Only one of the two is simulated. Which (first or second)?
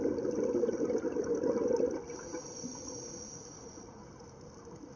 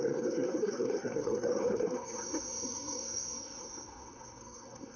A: second